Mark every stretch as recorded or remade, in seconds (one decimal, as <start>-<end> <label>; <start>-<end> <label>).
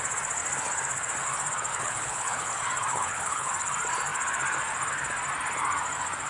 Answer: 0.0-1.7 recorded; 1.7-2.5 remade; 2.5-2.9 recorded; 2.9-3.5 remade; 3.5-6.3 recorded